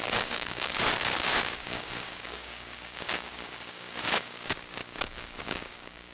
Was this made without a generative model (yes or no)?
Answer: no